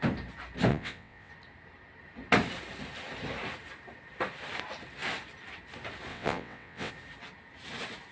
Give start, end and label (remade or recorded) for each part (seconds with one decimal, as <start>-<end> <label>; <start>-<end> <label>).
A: 0.0-0.7 recorded; 0.7-1.3 remade; 1.3-6.1 recorded; 6.1-6.9 remade; 6.9-8.1 recorded